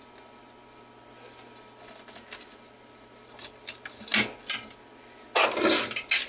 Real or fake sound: real